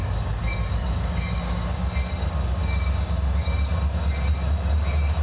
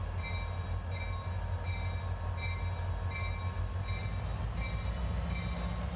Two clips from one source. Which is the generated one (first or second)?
first